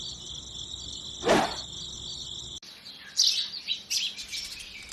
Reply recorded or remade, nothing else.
recorded